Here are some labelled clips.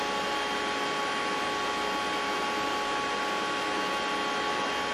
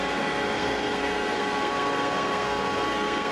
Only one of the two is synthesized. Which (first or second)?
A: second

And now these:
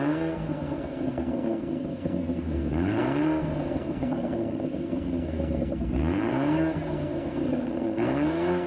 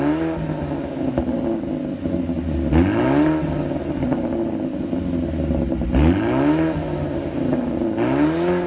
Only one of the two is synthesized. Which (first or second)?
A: first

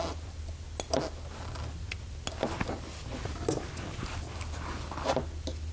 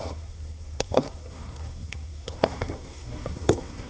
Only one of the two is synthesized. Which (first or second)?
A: second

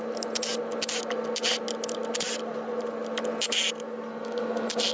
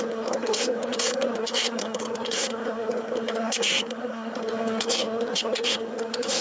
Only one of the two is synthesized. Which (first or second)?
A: second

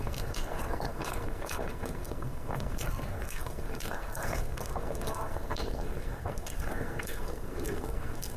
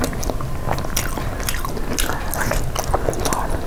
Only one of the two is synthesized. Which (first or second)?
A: first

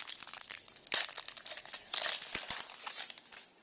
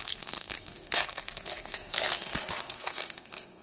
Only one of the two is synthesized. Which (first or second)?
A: second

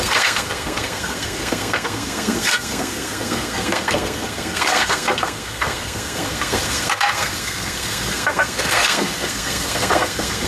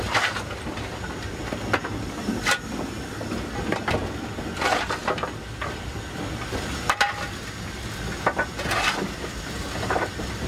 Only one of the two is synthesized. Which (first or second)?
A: first